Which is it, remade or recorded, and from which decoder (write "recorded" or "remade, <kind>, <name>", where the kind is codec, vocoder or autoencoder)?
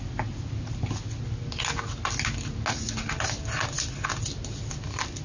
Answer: recorded